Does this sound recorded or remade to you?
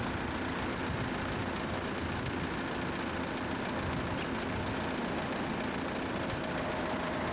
recorded